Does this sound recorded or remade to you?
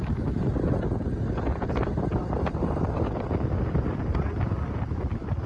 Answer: recorded